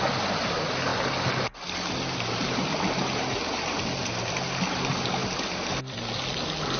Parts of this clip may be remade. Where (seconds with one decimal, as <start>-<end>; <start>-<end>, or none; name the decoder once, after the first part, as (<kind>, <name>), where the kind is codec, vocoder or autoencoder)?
none